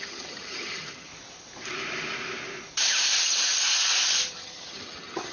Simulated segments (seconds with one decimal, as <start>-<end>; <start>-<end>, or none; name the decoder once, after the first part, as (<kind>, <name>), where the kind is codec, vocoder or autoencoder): 0.0-1.1 (vocoder, HiFi-GAN); 4.3-5.3